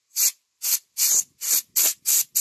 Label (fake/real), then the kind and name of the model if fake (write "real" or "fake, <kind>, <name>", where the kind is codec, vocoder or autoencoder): real